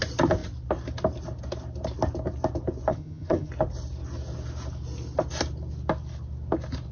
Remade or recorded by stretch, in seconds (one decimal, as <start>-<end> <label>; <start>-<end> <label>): 0.0-2.9 recorded; 2.9-3.5 remade; 3.5-6.9 recorded